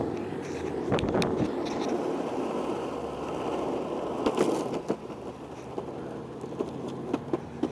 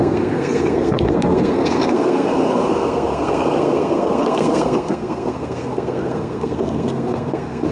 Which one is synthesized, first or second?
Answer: second